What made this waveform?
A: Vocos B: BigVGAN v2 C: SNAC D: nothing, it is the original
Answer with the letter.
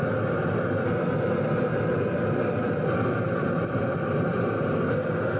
D